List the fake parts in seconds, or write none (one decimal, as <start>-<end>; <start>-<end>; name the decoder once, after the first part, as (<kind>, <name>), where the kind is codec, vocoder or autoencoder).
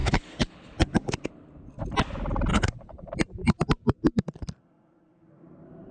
0.0-1.3 (codec, HILCodec); 2.5-3.1